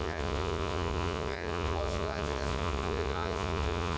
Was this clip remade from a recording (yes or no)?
yes